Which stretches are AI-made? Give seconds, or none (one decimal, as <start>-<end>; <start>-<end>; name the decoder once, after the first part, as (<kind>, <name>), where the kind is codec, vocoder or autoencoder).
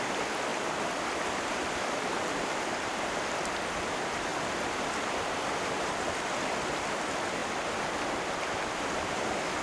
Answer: 0.5-3.5 (vocoder, BigVGAN v2); 4.3-5.2